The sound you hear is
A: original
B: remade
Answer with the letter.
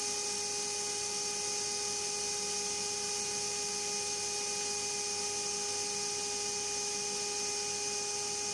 A